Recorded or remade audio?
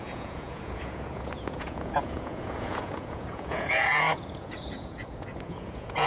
remade